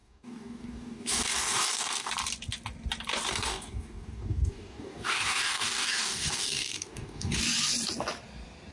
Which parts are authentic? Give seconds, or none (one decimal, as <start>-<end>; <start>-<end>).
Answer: 2.1-3.3; 7.4-8.7